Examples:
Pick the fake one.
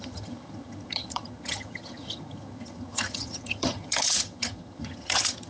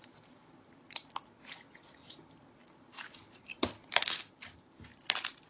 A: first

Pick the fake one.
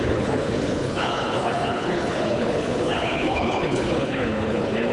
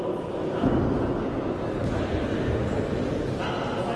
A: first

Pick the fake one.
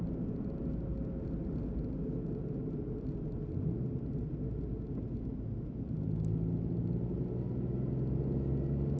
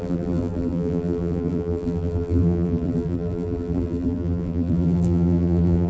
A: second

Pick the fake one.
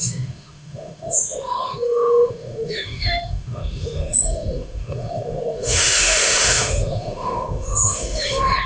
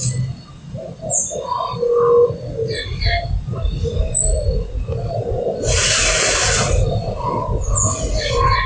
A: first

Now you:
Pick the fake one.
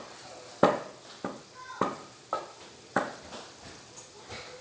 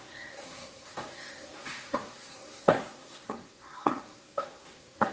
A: second